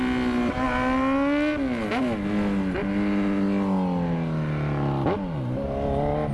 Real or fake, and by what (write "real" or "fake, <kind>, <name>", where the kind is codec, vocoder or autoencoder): real